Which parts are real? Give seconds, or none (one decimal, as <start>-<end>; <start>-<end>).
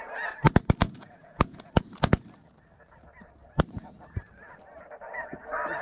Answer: 0.0-0.8; 1.7-5.8